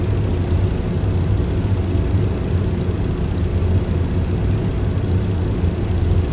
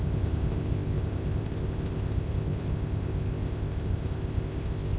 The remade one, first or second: second